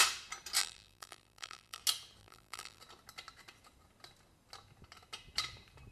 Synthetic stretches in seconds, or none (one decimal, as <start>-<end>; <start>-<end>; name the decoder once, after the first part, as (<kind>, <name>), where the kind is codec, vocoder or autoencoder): 0.6-1.8 (vocoder, BigVGAN v2); 2.2-2.8